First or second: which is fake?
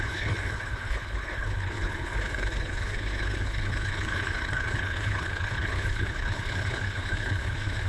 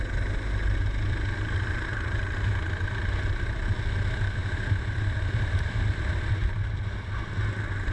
first